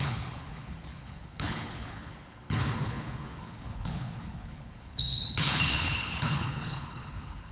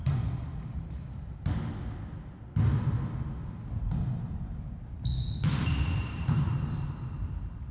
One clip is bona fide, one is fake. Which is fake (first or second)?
first